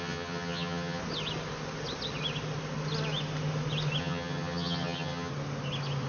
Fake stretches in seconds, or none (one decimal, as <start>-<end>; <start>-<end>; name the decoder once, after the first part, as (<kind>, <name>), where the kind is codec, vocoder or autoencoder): 0.0-1.0 (vocoder, HiFi-GAN); 4.0-5.3